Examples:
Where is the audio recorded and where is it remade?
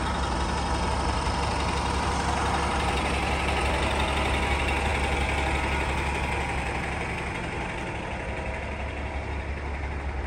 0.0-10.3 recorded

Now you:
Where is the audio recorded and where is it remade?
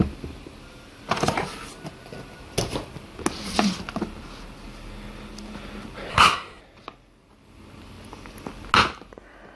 0.0-6.1 recorded; 6.1-6.6 remade; 6.6-9.6 recorded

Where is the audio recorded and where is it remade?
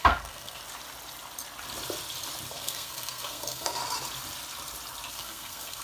0.0-0.6 remade; 0.6-2.5 recorded; 2.5-3.8 remade; 3.8-5.1 recorded; 5.1-5.8 remade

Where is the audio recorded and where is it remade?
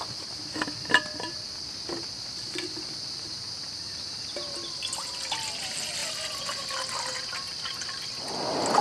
0.0-8.8 recorded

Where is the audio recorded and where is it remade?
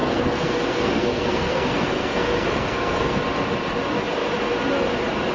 0.0-3.2 remade; 3.2-5.3 recorded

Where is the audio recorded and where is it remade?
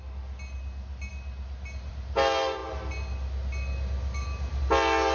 0.0-5.1 recorded